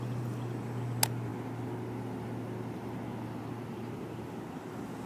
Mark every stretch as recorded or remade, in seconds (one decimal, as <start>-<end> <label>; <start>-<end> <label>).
0.0-5.1 recorded